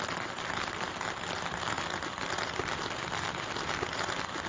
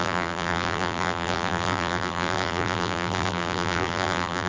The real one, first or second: first